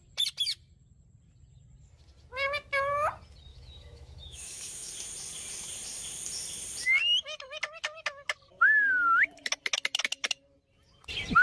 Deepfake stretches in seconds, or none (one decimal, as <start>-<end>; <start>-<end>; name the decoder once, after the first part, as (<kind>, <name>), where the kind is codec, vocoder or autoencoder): 3.5-4.9 (autoencoder, DAC-VAE)